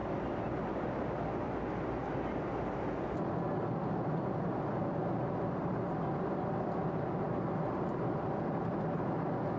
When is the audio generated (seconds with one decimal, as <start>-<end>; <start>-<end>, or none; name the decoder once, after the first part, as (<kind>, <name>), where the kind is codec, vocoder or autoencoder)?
0.0-1.0 (vocoder, BigVGAN v2); 2.0-3.4; 4.0-7.7